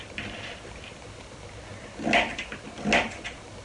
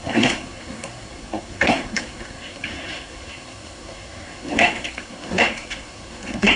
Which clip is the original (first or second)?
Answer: first